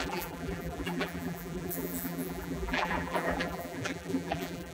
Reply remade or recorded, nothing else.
remade